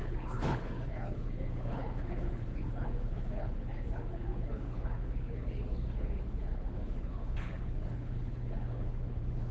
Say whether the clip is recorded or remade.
remade